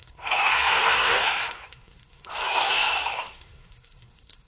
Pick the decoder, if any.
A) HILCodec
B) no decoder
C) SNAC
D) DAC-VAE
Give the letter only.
C